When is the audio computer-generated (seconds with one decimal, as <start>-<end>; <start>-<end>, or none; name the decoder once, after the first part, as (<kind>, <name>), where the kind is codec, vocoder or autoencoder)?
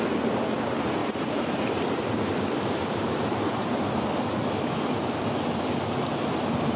1.0-3.7 (vocoder, BigVGAN v2)